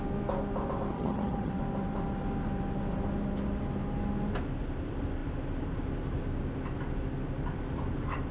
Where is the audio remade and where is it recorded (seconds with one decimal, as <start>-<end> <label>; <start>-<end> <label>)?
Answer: 0.0-0.9 recorded; 0.9-1.5 remade; 1.5-8.3 recorded